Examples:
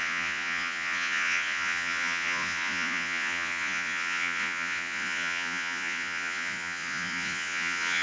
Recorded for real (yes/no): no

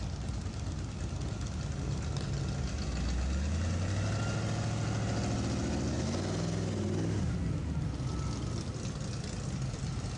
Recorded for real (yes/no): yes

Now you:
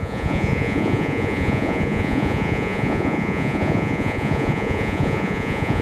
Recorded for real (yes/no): no